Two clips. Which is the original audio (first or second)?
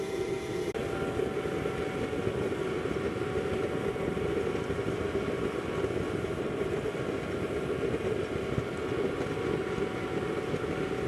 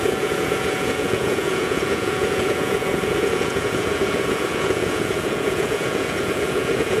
first